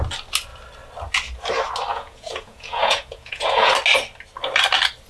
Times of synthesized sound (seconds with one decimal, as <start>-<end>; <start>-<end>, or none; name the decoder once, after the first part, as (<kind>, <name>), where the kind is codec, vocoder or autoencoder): 1.9-3.7 (vocoder, Vocos)